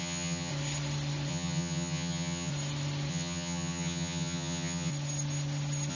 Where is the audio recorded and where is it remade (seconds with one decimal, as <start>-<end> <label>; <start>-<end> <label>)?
0.0-0.5 remade; 0.5-1.3 recorded; 1.3-2.5 remade; 2.5-3.1 recorded; 3.1-4.9 remade; 4.9-5.9 recorded